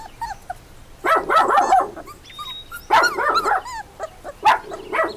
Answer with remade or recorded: recorded